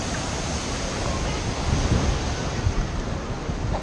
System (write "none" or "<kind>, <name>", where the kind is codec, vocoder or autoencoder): none